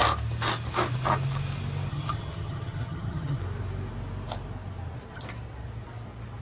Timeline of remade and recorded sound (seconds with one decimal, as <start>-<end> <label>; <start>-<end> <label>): 0.0-1.9 recorded; 1.9-3.4 remade; 3.4-6.4 recorded